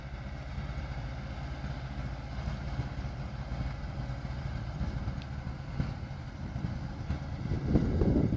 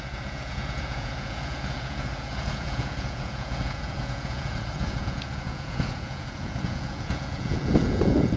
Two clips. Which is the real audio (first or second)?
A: first